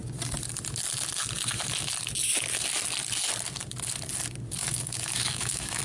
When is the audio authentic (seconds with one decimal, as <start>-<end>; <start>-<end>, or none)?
0.0-4.6